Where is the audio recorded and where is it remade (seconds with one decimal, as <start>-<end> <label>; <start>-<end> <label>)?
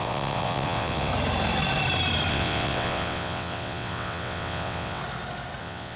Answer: 0.0-1.1 remade; 1.1-2.3 recorded; 2.3-5.0 remade; 5.0-5.6 recorded; 5.6-6.0 remade